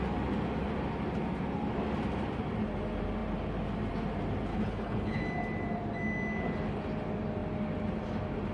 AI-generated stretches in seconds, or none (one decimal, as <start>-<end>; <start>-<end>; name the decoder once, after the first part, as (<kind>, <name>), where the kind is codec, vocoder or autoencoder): 4.5-5.2 (codec, HILCodec)